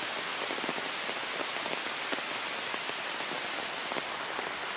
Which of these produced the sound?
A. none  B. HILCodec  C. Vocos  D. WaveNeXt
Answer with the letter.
A